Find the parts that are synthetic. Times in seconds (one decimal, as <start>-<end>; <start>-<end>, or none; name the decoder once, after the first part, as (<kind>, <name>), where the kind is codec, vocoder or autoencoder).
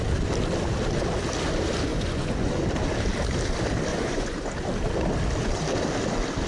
1.9-2.6 (vocoder, Vocos); 3.9-4.5